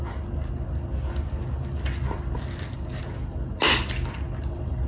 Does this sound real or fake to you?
real